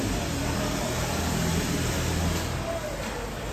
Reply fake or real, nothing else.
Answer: real